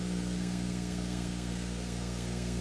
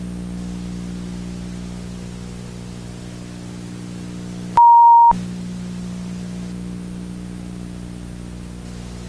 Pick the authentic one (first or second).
second